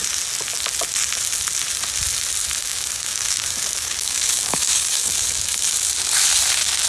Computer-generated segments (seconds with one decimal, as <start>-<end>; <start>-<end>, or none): 2.6-5.7